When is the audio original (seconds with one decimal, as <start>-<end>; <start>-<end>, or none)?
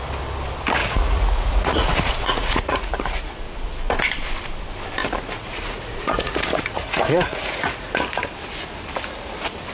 0.0-0.8; 3.4-5.0; 7.9-9.7